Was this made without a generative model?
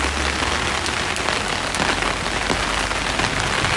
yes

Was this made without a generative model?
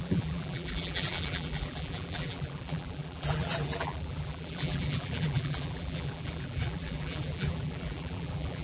no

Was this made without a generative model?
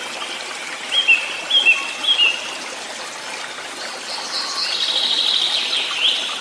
yes